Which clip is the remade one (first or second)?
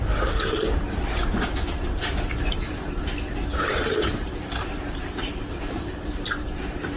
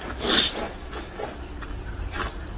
first